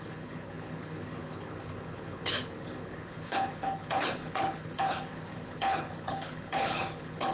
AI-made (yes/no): yes